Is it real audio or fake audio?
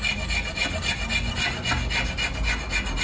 real